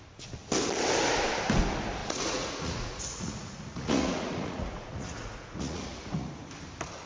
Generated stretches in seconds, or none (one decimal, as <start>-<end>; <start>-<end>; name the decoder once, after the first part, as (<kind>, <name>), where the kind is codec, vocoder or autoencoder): 2.0-6.3 (vocoder, Vocos)